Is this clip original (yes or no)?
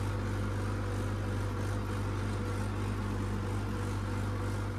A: yes